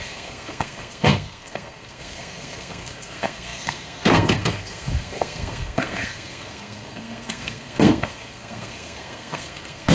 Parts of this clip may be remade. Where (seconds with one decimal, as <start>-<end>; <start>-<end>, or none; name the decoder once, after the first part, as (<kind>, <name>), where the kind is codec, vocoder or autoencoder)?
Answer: 0.0-9.9 (codec, SNAC)